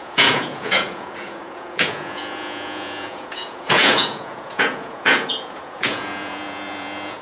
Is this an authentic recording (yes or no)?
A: no